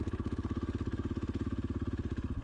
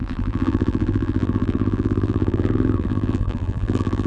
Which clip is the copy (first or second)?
second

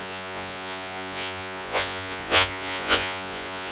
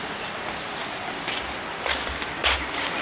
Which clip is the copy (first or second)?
first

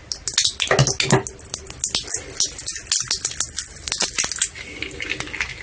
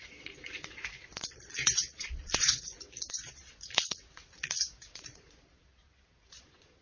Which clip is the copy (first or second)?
second